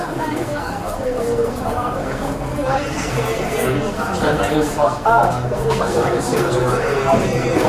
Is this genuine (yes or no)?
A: no